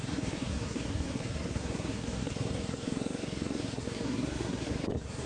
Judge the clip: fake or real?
fake